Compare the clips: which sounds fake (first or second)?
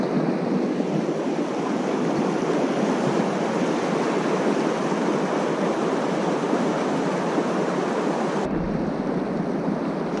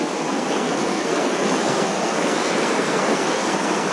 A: second